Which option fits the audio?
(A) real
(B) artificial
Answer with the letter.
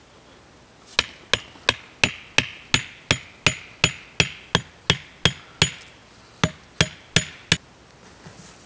A